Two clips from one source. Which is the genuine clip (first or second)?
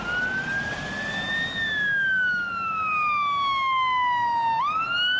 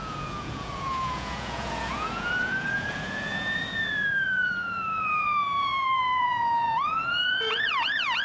first